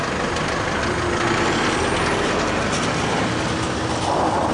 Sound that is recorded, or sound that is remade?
recorded